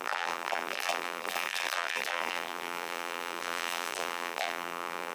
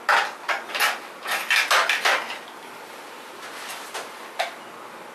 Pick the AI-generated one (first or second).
first